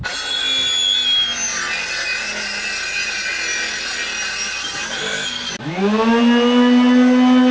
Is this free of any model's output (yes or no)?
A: yes